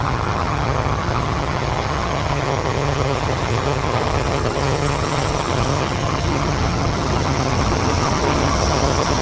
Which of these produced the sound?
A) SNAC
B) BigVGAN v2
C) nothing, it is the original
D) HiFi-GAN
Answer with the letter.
D